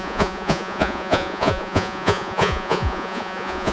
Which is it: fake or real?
fake